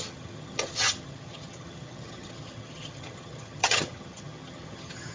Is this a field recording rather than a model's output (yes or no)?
no